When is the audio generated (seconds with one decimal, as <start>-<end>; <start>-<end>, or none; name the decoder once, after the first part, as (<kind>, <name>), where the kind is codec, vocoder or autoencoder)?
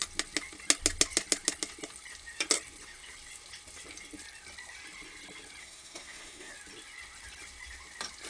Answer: 5.6-6.5 (codec, SNAC)